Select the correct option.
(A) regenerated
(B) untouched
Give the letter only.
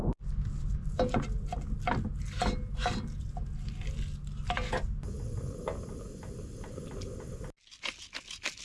B